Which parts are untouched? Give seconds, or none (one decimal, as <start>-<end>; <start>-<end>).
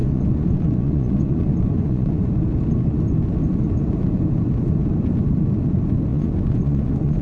2.3-6.1